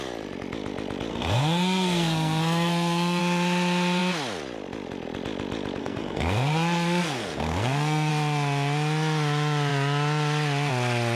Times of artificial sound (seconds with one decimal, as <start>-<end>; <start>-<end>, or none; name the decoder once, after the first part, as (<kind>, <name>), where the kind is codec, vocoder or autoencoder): 1.1-3.2 (codec, SNAC); 5.8-8.1